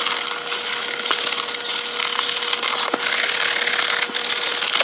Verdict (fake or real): real